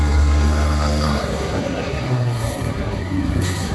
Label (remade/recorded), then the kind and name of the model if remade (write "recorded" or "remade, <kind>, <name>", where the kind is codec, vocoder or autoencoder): remade, codec, SNAC